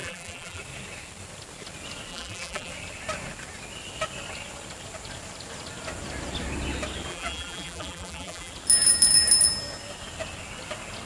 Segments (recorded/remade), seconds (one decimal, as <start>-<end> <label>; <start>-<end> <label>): 0.0-0.6 remade; 0.6-2.1 recorded; 2.1-2.7 remade; 2.7-7.1 recorded; 7.1-8.5 remade; 8.5-11.1 recorded